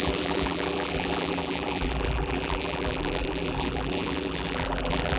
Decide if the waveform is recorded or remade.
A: remade